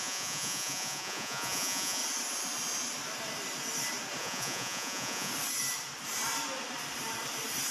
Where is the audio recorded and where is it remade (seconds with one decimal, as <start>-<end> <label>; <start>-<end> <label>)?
0.0-2.0 remade; 2.0-4.2 recorded; 4.2-5.3 remade; 5.3-7.7 recorded